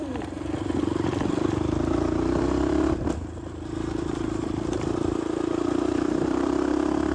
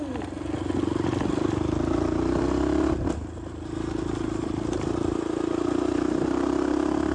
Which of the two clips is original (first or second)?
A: second